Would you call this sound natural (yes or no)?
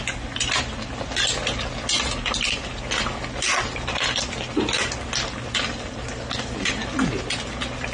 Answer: yes